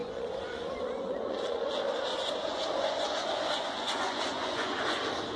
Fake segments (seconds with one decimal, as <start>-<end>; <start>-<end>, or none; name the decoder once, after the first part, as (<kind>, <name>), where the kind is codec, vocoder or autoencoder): 0.0-1.7 (vocoder, Vocos); 2.1-5.0